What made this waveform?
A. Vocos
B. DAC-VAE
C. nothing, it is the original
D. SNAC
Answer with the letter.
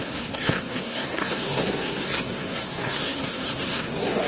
D